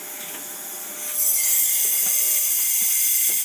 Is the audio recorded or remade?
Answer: recorded